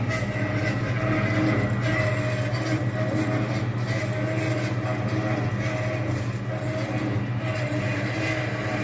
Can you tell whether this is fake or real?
real